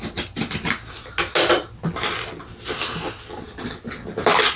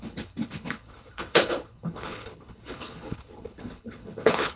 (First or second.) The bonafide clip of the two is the first